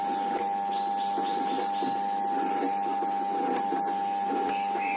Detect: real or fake real